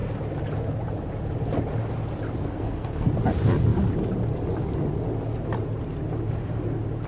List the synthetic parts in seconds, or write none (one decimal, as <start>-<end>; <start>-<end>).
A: 2.4-3.1